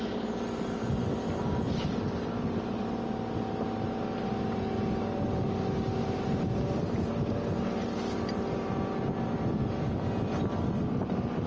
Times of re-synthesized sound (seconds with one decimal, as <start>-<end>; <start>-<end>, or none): 6.0-6.5